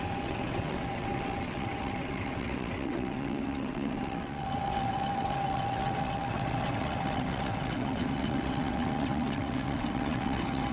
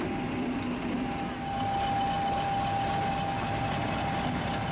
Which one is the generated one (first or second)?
first